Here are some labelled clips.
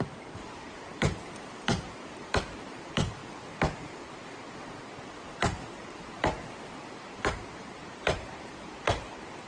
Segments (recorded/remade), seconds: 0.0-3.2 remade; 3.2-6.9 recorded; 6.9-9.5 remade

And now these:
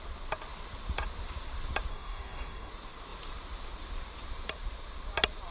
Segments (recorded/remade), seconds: 0.0-1.9 recorded; 1.9-2.7 remade; 2.7-5.5 recorded

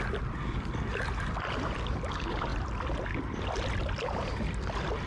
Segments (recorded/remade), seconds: 0.0-5.1 recorded